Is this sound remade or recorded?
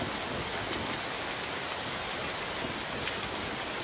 recorded